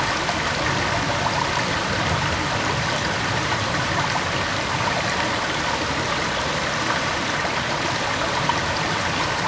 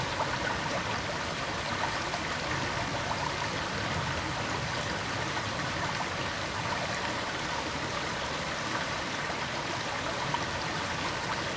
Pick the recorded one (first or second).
second